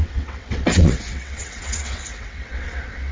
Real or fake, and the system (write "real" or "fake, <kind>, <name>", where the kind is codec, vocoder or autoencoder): fake, vocoder, WaveNeXt